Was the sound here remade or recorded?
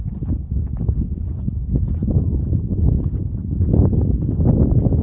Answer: recorded